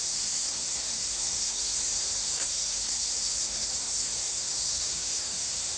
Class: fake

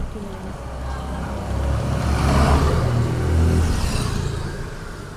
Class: real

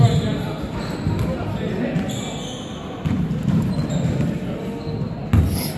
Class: real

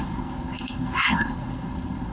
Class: fake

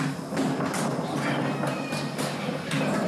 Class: real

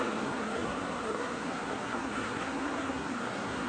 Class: fake